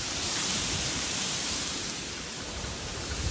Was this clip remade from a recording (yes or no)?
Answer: yes